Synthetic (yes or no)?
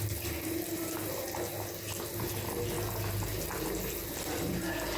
no